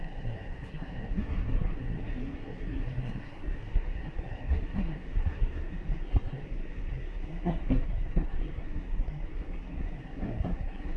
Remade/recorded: remade